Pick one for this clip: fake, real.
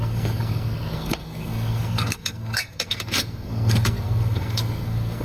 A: fake